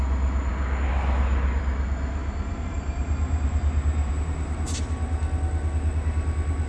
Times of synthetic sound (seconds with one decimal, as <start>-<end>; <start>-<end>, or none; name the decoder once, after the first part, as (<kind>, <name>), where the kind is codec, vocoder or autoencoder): 2.2-4.8 (vocoder, BigVGAN v2)

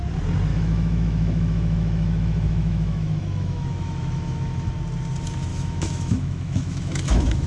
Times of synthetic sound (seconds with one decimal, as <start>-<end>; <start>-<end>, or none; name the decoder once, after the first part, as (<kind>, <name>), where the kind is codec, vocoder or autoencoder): 0.5-4.7 (autoencoder, DAC-VAE); 5.5-7.5

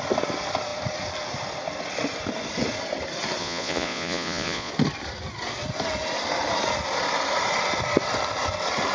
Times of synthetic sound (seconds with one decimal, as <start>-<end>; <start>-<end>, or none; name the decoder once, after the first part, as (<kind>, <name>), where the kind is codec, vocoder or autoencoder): 3.4-4.7 (vocoder, Vocos)

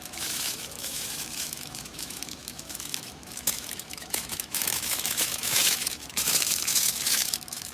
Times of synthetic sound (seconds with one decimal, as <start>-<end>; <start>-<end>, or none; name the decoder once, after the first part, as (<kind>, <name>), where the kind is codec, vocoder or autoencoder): 0.0-7.7 (autoencoder, DAC-VAE)